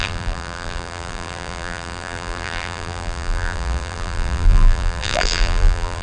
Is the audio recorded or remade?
remade